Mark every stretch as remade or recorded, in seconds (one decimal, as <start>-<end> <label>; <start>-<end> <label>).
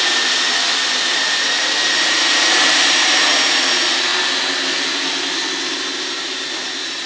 0.0-4.1 remade; 4.1-6.0 recorded; 6.0-7.1 remade